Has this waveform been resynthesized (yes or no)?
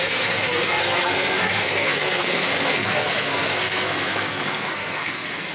yes